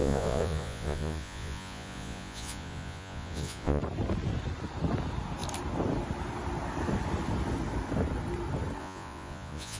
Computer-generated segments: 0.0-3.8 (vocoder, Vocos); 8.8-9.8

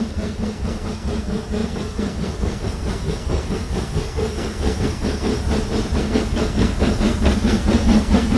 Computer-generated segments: 0.0-5.3 (codec, SNAC); 6.0-8.4

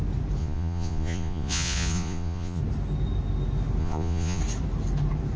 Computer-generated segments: 0.4-2.6 (vocoder, Vocos); 3.8-4.4

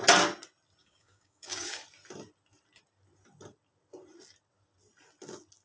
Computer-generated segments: 0.8-1.8 (codec, DAC)

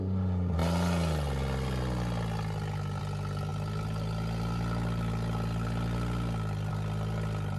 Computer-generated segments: none

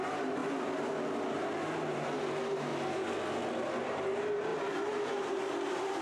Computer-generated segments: 0.0-0.4 (vocoder, BigVGAN v2); 1.9-2.7; 3.8-6.0